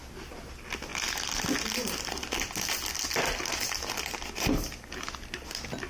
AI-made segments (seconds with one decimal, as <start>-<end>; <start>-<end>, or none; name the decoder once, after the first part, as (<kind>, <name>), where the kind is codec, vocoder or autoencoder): none